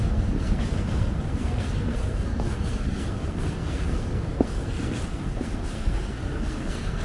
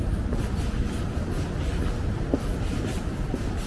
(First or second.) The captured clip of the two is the second